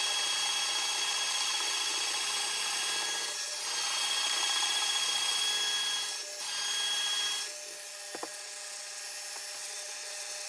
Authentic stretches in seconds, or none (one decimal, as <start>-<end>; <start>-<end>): 0.0-8.3; 9.0-9.6